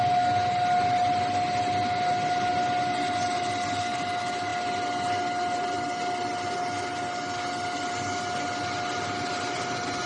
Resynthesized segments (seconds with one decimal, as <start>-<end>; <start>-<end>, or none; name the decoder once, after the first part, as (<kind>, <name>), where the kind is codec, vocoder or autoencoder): none